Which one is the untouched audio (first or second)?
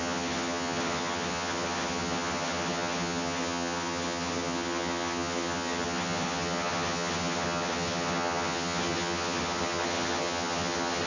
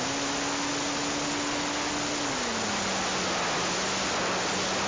second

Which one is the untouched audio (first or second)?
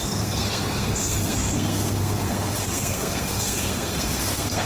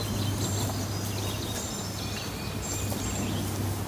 second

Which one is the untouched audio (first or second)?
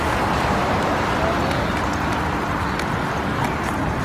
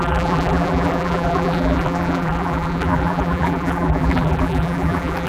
first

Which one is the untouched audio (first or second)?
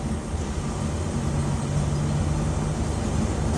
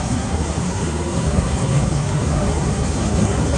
first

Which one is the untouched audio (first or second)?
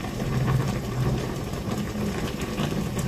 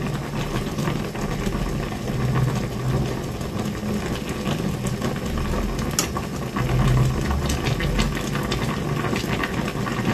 second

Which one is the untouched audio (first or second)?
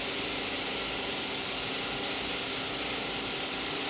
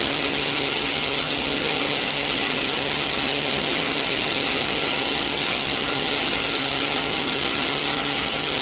first